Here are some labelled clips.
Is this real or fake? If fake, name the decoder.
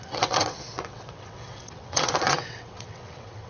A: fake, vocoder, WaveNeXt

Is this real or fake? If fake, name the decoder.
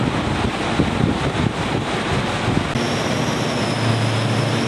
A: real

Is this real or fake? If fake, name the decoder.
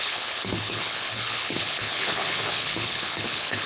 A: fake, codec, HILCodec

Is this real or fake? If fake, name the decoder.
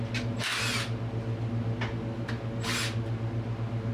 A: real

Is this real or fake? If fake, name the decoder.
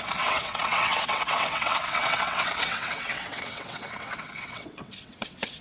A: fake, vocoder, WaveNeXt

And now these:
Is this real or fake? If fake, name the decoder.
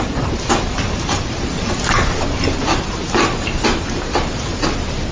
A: fake, vocoder, BigVGAN v2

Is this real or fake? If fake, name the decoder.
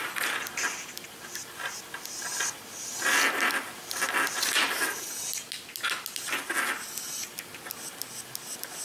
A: real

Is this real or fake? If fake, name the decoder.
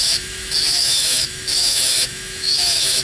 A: fake, autoencoder, DAC-VAE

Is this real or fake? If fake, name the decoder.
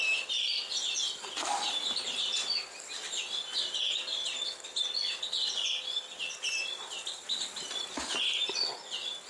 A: real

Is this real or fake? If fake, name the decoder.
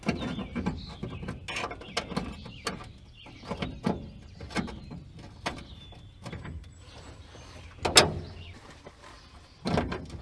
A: real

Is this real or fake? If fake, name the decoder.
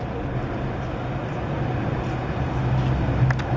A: real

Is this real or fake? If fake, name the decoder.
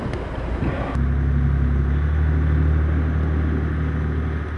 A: real